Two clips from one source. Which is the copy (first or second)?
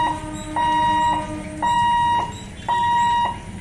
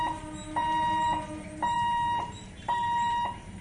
second